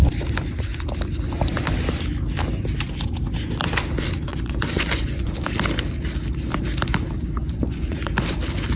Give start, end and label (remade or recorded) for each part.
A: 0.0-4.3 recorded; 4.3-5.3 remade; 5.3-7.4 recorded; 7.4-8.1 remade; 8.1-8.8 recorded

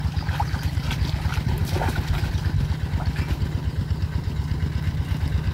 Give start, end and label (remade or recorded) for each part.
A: 0.0-5.5 recorded

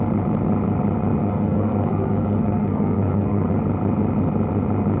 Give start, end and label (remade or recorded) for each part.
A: 0.0-1.2 recorded; 1.2-3.5 remade; 3.5-5.0 recorded

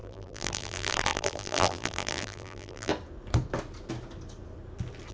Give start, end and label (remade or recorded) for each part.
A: 0.0-2.9 remade; 2.9-5.1 recorded